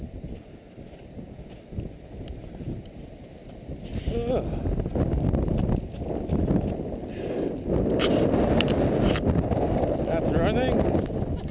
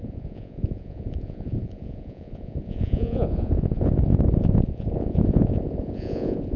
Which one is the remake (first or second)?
second